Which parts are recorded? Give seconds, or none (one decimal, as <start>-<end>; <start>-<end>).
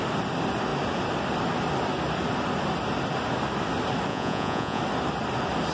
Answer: 0.0-4.1; 4.8-5.7